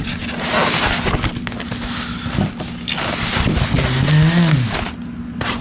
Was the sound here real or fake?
real